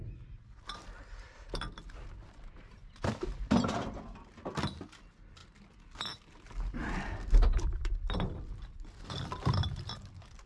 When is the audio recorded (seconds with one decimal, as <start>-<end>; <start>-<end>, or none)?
none